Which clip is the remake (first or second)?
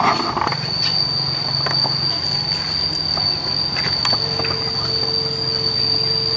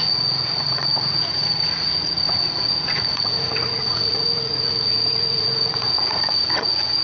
second